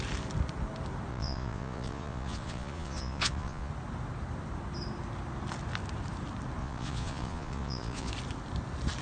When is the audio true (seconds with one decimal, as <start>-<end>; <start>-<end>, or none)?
0.0-1.1; 3.7-6.6; 8.1-9.0